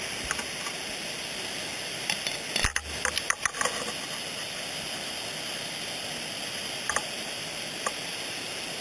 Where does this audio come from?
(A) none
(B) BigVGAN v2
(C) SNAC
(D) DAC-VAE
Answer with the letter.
A